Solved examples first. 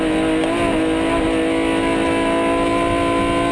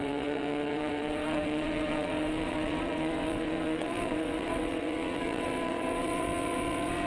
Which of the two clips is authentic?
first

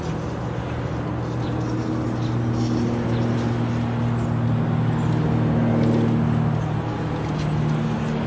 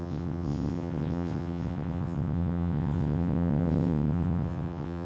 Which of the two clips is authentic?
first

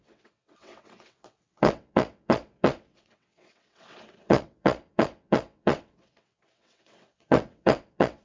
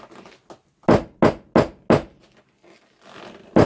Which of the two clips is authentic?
second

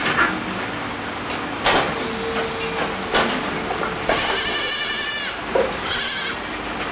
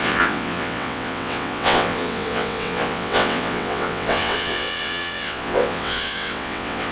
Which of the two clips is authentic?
first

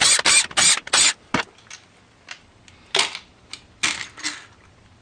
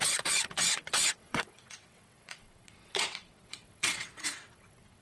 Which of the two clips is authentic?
first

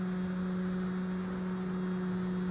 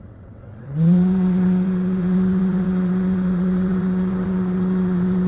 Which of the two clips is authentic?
first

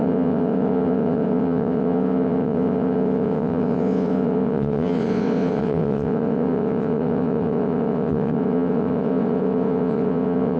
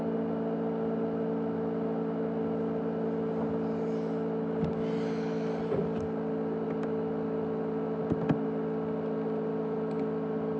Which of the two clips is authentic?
second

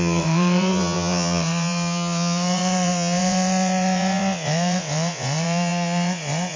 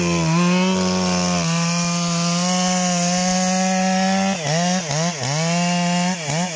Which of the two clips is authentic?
second